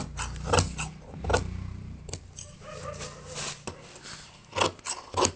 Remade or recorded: recorded